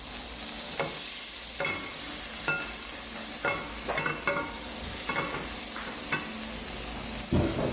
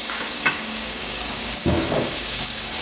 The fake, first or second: second